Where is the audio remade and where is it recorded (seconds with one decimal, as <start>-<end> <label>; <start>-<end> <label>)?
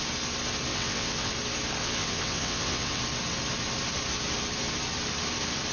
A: 0.0-0.7 recorded; 0.7-1.3 remade; 1.3-1.8 recorded; 1.8-3.0 remade; 3.0-5.7 recorded